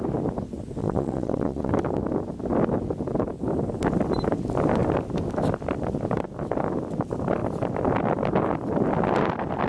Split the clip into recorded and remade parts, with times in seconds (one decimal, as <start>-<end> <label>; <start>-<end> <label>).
0.0-0.8 recorded; 0.8-1.7 remade; 1.7-9.7 recorded